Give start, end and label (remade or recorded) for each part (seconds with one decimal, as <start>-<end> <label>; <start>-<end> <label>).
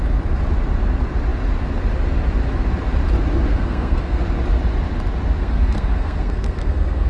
0.0-3.5 recorded; 3.5-4.2 remade; 4.2-5.4 recorded; 5.4-7.1 remade